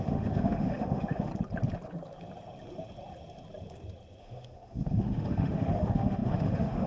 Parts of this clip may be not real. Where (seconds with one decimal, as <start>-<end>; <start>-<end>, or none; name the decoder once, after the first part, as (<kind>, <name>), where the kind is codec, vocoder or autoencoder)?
0.0-1.3 (autoencoder, DAC-VAE); 4.2-6.9